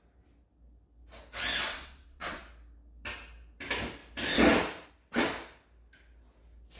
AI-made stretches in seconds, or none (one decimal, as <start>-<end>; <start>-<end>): 1.7-2.4